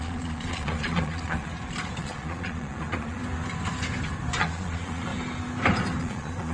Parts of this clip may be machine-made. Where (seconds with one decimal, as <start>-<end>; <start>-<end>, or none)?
0.0-1.5; 2.0-3.2; 4.4-5.1; 6.0-6.5